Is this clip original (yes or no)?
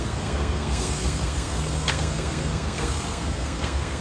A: no